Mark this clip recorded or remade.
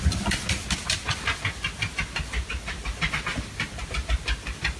recorded